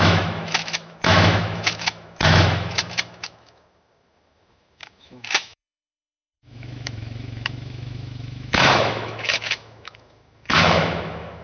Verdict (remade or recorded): remade